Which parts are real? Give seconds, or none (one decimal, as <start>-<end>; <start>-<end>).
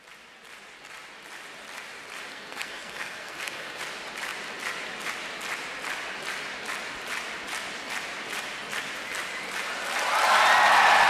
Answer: 0.0-2.3; 3.8-11.1